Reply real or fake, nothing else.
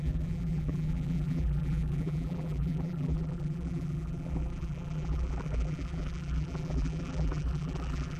fake